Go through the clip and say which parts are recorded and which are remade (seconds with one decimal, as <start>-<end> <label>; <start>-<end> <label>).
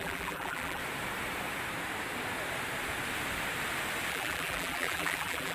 0.0-0.8 remade; 0.8-4.1 recorded; 4.1-5.5 remade